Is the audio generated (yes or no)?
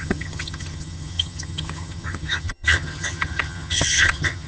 yes